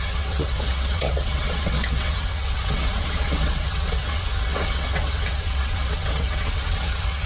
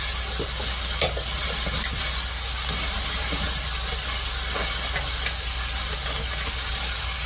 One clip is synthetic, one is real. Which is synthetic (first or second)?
first